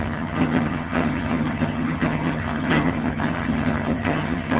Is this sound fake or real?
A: fake